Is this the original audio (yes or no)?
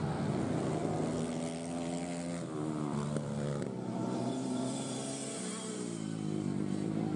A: yes